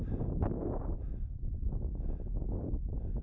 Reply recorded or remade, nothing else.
recorded